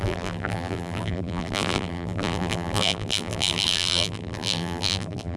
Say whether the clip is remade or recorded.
remade